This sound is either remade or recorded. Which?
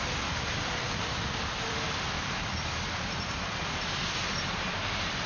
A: remade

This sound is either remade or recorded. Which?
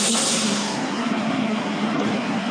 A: remade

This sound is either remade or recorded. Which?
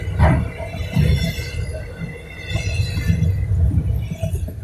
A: recorded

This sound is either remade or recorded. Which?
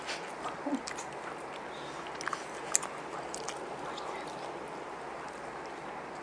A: recorded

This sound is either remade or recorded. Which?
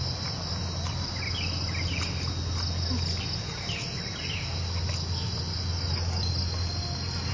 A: recorded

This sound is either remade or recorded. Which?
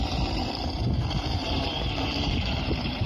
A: remade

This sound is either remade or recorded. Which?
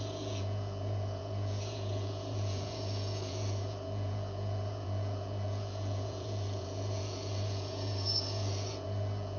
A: remade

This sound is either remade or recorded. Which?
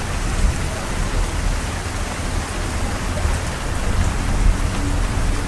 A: recorded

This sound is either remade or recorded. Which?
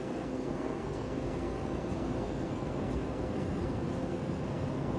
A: remade